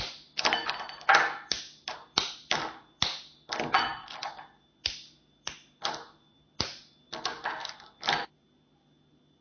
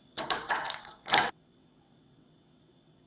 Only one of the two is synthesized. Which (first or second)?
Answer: second